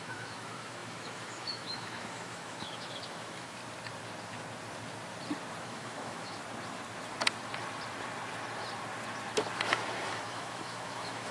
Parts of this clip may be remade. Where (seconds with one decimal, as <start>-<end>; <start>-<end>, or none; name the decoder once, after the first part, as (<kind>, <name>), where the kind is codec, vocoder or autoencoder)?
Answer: 0.0-3.6 (autoencoder, DAC-VAE); 5.6-6.4; 10.1-11.3